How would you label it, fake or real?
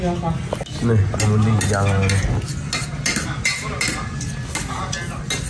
real